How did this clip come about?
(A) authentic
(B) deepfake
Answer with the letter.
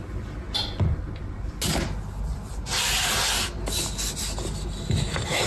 A